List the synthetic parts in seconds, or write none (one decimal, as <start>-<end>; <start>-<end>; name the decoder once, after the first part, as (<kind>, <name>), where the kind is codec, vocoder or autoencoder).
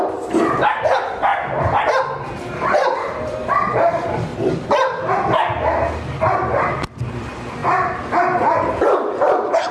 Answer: 0.0-4.3 (vocoder, BigVGAN v2); 6.7-7.6; 8.6-9.7